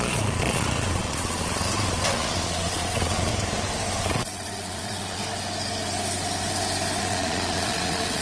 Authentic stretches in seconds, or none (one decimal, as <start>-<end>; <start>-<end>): 3.3-4.0; 5.2-7.0